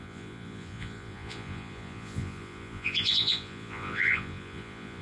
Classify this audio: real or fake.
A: fake